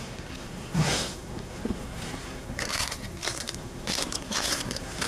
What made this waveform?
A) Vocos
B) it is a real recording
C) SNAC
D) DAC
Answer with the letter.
C